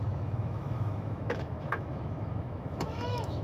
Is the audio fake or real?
fake